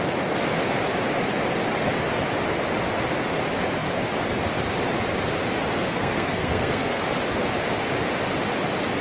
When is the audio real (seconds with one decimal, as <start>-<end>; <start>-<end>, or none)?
0.0-5.9; 7.0-9.0